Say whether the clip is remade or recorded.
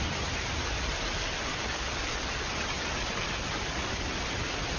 recorded